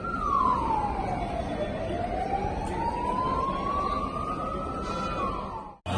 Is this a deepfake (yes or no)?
no